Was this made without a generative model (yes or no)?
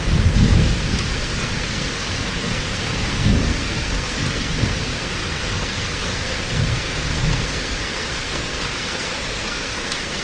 no